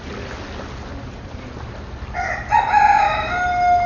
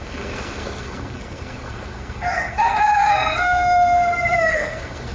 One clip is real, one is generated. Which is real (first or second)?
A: first